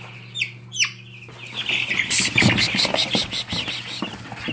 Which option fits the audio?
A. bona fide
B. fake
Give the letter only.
A